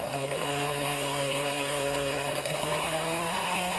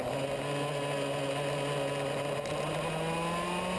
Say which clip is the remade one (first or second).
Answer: first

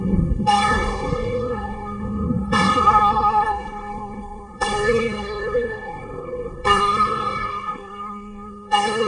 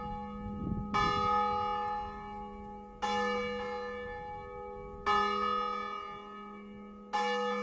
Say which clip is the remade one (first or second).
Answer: first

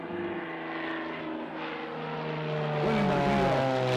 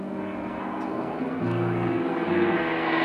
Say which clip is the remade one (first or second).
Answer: second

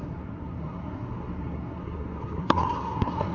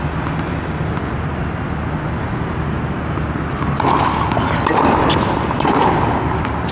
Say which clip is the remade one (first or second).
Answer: first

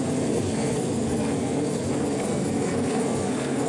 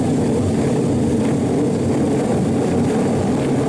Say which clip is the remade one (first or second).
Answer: first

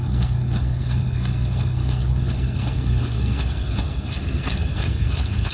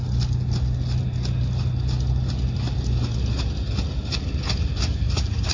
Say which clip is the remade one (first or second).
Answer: first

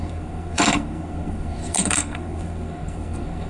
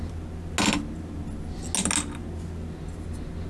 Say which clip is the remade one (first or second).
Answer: first